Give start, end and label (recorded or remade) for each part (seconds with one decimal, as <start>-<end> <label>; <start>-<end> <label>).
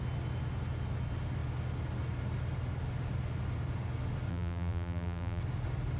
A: 0.0-4.3 recorded; 4.3-5.4 remade; 5.4-6.0 recorded